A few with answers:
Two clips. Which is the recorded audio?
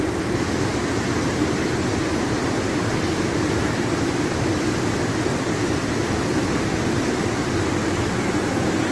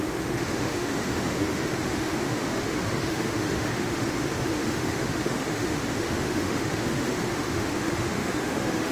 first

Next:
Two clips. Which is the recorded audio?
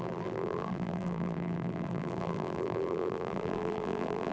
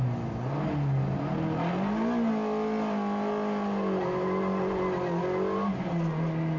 second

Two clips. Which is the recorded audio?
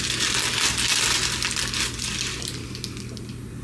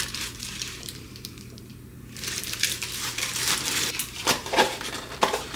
first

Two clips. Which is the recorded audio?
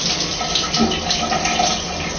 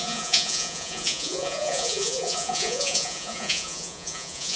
first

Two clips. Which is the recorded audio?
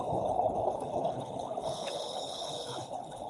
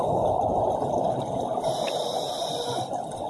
second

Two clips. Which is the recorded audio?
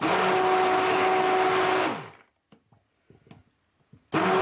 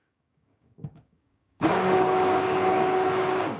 first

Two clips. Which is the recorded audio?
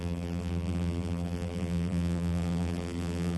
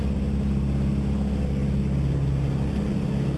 second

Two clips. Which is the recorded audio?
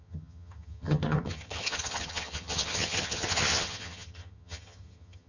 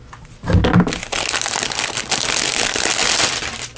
second